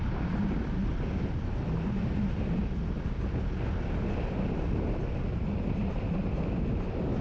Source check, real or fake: real